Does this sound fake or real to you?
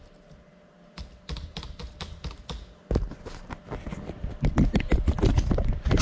real